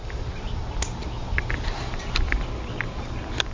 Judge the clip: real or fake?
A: real